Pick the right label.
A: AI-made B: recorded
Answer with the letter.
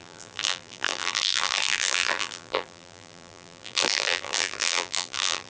A